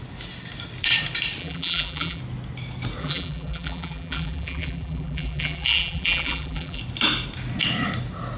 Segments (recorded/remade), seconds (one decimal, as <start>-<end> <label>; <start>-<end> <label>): 0.0-1.4 recorded; 1.4-2.2 remade; 2.2-3.0 recorded; 3.0-6.8 remade; 6.8-8.4 recorded